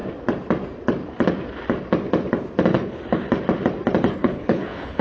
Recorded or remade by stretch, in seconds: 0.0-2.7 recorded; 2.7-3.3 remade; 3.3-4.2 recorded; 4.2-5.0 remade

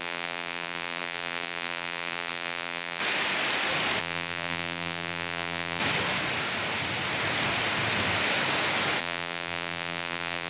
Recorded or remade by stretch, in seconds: 0.0-3.0 remade; 3.0-4.0 recorded; 4.0-5.8 remade; 5.8-9.0 recorded; 9.0-10.5 remade

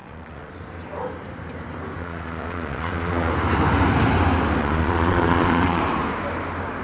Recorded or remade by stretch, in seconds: 0.0-0.5 remade; 0.5-2.0 recorded; 2.0-3.3 remade; 3.3-4.6 recorded; 4.6-5.8 remade; 5.8-6.8 recorded

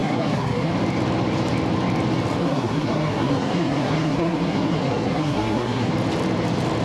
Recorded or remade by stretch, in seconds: 0.0-0.7 remade; 0.7-2.4 recorded; 2.4-5.9 remade; 5.9-6.8 recorded

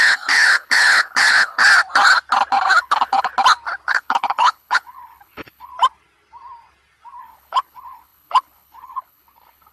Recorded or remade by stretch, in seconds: 0.0-1.6 remade; 1.6-2.8 recorded; 2.8-3.3 remade; 3.3-3.9 recorded; 3.9-5.7 remade; 5.7-7.2 recorded; 7.2-9.7 remade